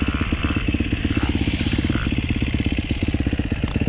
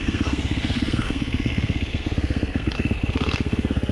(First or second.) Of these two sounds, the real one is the first